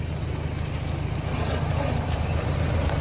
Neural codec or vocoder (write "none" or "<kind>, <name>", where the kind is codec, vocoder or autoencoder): none